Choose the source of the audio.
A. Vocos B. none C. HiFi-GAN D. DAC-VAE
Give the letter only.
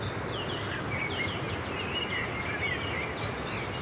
B